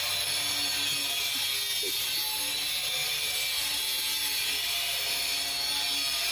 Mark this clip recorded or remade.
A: recorded